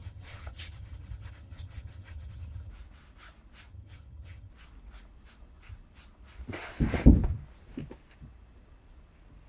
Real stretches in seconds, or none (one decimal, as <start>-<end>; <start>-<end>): 2.7-3.7; 4.5-9.5